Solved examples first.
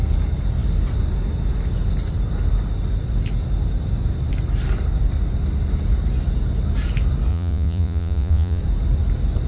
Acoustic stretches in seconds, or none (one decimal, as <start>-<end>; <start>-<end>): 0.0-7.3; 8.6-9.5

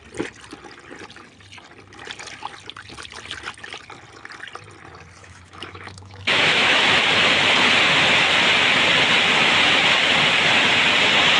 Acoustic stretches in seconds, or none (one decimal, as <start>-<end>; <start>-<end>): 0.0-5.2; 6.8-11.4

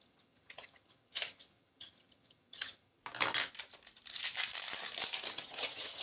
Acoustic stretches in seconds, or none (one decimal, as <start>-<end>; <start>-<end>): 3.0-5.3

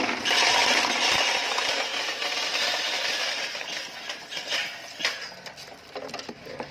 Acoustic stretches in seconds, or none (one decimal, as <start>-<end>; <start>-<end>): 0.0-0.6; 1.5-1.9; 2.9-6.7